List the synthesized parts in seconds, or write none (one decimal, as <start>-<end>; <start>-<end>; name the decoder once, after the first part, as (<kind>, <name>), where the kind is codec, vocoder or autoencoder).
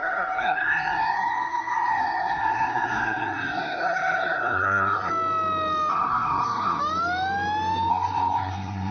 0.0-5.1 (codec, SNAC); 5.9-6.8; 7.9-8.9